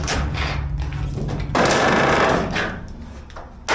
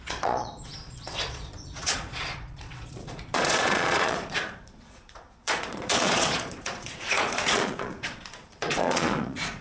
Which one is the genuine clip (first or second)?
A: first